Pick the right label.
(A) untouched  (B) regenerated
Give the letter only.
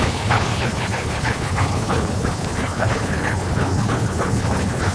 B